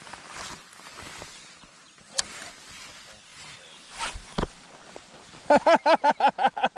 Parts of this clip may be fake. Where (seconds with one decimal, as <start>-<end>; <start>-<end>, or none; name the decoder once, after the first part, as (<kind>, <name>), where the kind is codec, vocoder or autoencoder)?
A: none